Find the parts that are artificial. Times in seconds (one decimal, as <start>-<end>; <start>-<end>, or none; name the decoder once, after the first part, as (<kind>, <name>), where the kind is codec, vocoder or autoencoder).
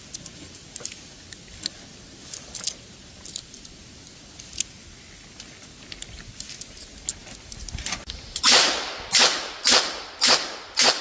none